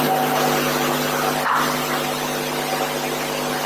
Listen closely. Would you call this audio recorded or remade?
recorded